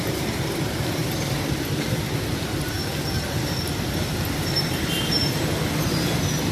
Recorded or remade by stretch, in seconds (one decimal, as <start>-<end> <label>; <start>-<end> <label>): 0.0-6.5 recorded